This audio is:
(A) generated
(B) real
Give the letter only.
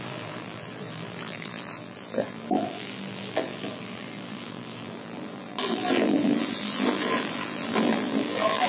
A